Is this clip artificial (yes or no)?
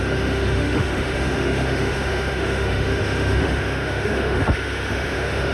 yes